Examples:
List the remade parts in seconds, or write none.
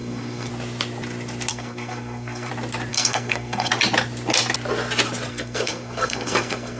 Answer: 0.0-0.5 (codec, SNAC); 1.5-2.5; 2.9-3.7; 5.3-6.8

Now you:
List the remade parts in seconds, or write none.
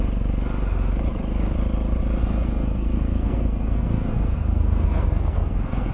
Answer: 2.2-5.9 (codec, SNAC)